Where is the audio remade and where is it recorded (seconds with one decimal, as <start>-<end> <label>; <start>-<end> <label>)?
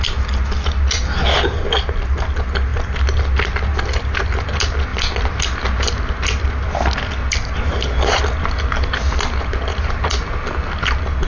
0.0-11.3 recorded